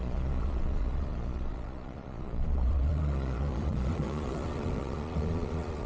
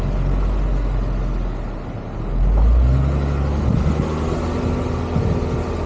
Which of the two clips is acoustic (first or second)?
second